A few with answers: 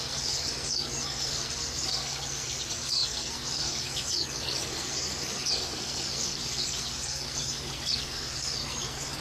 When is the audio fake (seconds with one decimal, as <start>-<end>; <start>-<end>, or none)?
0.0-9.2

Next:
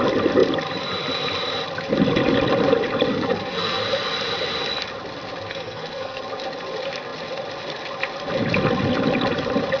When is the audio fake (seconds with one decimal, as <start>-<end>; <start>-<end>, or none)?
3.1-3.8; 5.5-6.2

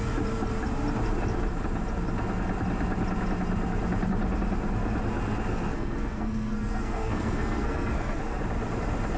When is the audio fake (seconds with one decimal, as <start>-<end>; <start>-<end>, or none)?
5.5-8.4

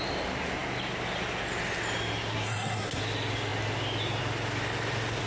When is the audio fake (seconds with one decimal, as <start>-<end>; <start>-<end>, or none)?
2.3-3.0